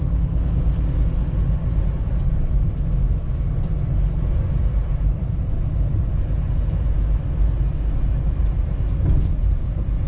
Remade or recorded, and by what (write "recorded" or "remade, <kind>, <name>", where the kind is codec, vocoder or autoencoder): recorded